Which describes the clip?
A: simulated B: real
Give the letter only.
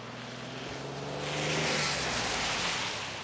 B